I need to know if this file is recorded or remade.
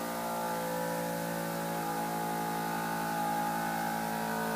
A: recorded